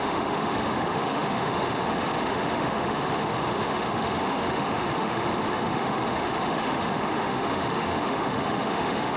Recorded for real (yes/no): no